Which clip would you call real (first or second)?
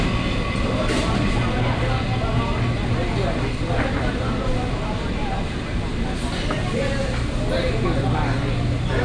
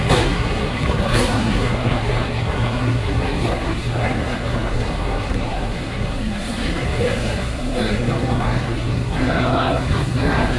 first